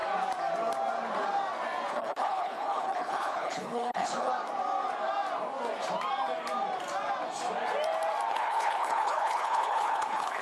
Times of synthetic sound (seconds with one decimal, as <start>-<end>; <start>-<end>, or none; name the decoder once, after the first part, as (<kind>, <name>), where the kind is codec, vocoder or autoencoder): 1.9-4.3 (codec, HILCodec); 8.3-10.4